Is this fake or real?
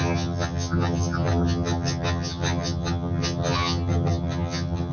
fake